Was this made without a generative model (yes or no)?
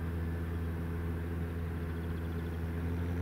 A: yes